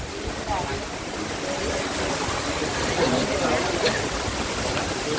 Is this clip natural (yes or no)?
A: yes